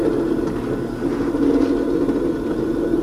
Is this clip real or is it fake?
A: real